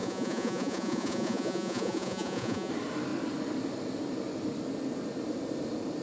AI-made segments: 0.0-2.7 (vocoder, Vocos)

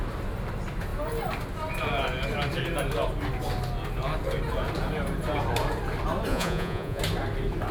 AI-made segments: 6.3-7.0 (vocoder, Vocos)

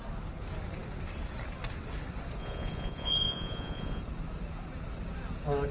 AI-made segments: 2.4-4.0 (vocoder, Vocos)

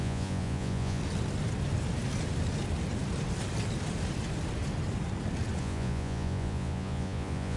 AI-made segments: 0.0-1.0 (vocoder, Vocos); 5.6-7.6

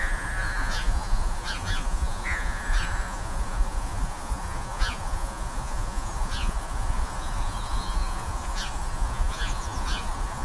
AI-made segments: 0.0-10.4 (vocoder, Vocos)